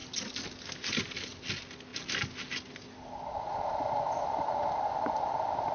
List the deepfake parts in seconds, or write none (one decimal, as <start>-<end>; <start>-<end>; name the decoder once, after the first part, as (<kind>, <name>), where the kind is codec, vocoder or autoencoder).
none